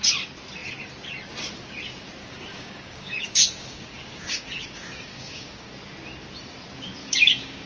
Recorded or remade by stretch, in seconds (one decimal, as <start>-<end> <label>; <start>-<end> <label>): 0.0-2.2 recorded; 2.2-5.7 remade; 5.7-7.0 recorded; 7.0-7.7 remade